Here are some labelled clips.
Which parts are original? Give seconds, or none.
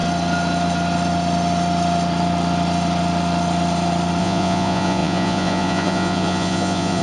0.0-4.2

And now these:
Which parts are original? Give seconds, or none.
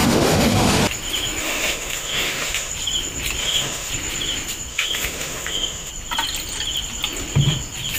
0.8-1.4; 2.7-3.4; 3.9-4.7; 5.9-8.0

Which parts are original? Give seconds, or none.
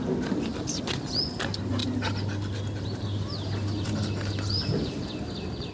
0.0-1.8; 5.0-5.7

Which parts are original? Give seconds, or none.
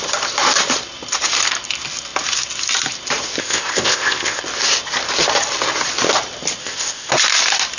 0.0-3.4; 4.4-6.6; 7.1-7.8